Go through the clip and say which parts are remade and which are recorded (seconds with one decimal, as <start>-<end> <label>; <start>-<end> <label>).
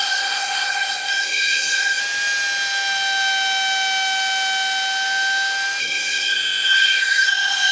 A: 0.0-2.0 remade; 2.0-5.8 recorded; 5.8-7.7 remade